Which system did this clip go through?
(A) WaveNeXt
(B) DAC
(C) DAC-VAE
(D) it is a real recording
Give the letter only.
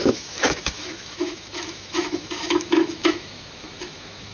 C